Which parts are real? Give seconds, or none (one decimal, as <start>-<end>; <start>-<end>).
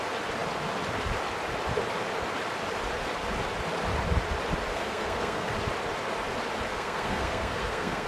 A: 0.0-4.7; 5.5-6.7